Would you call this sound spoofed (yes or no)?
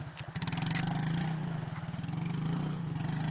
no